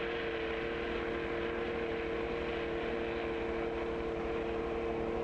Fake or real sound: real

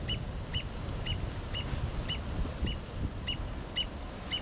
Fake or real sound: real